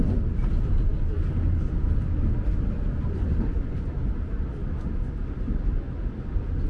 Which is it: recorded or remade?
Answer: recorded